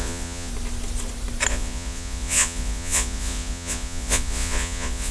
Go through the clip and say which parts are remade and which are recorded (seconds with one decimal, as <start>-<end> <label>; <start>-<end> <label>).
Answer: 0.0-0.5 remade; 0.5-1.5 recorded; 1.5-5.1 remade